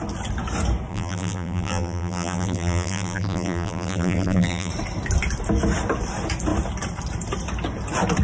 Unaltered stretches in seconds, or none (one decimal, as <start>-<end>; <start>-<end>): 0.0-0.9; 4.7-8.2